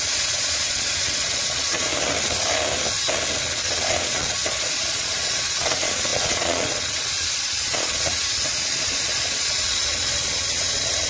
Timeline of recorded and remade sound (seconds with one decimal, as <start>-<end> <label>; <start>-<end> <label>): 0.0-1.9 remade; 1.9-3.4 recorded; 3.4-11.1 remade